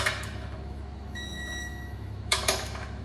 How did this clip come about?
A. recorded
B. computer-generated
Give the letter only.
B